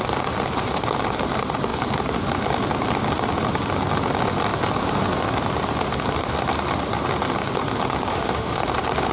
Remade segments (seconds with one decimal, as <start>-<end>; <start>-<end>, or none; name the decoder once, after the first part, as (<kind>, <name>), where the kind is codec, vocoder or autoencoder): 8.1-8.6 (autoencoder, DAC-VAE)